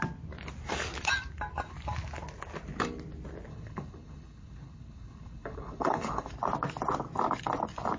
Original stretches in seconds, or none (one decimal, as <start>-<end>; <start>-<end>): 0.0-3.5; 6.3-8.0